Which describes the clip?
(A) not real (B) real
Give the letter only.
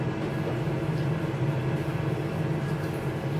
B